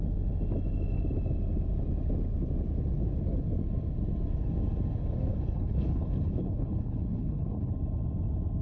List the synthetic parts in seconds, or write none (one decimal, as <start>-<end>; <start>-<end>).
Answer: 5.3-7.7